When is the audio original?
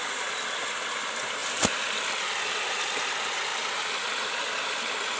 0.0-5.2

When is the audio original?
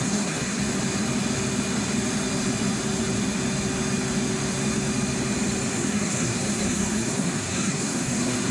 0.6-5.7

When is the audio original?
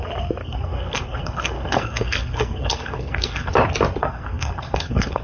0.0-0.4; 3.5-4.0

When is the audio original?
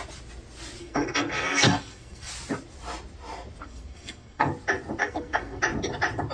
0.0-0.8; 2.3-3.6; 4.5-5.0; 5.6-6.3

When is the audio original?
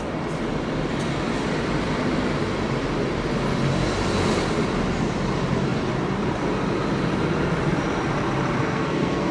0.0-8.6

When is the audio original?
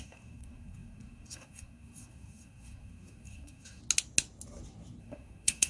3.8-5.0